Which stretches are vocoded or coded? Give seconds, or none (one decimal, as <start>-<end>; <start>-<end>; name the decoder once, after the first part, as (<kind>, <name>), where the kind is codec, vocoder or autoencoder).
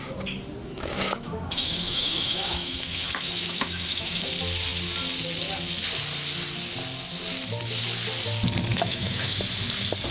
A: 0.6-4.3 (autoencoder, DAC-VAE); 8.7-9.4